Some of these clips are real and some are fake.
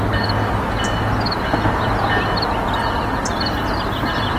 real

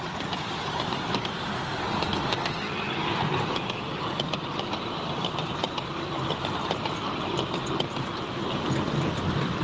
fake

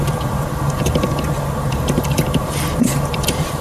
fake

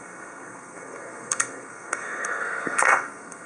fake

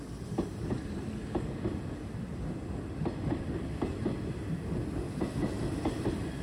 fake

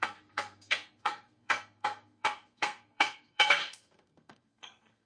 fake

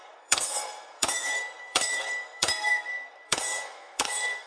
fake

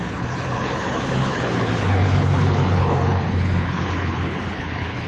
fake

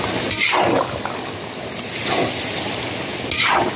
real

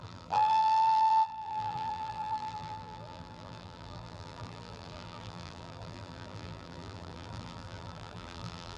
fake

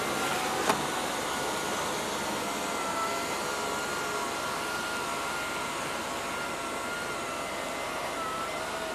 real